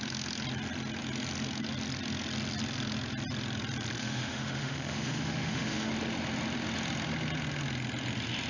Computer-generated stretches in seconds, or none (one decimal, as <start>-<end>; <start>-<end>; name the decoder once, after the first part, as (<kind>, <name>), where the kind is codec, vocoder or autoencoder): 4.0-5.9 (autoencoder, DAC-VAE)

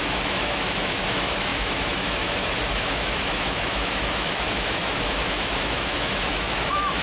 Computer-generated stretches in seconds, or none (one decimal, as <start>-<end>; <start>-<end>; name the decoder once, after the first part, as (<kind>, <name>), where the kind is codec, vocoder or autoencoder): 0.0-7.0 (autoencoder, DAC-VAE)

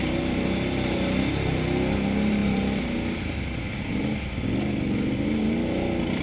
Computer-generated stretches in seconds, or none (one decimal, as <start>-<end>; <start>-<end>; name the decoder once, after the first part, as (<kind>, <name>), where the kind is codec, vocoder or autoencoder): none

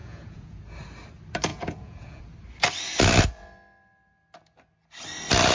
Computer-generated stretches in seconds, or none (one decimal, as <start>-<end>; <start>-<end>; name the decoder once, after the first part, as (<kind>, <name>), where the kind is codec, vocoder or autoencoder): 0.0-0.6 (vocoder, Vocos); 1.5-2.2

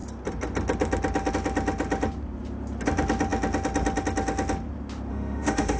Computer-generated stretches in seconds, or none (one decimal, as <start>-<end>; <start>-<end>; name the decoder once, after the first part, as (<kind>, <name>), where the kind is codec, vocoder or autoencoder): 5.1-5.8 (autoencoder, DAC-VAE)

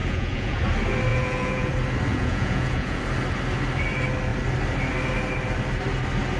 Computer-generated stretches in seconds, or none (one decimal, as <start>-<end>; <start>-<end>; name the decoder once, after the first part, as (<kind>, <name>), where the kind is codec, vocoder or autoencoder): 0.0-0.6 (vocoder, Vocos); 1.1-1.7; 2.1-3.0

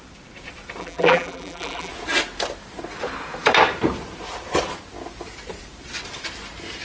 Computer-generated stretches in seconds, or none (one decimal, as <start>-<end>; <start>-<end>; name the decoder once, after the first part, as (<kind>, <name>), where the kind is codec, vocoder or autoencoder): 0.8-1.9 (vocoder, BigVGAN v2)